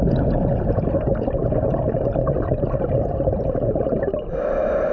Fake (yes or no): no